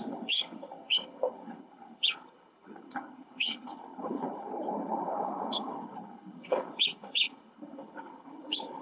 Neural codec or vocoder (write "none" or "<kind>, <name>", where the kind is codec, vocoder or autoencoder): codec, HILCodec